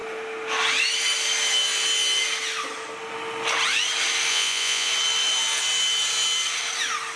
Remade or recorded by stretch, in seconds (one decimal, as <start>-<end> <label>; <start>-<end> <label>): 0.0-4.3 recorded; 4.3-4.9 remade; 4.9-7.2 recorded